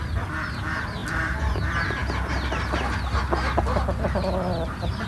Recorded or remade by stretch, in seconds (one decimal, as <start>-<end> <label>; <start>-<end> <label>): 0.0-1.0 recorded; 1.0-1.6 remade; 1.6-5.1 recorded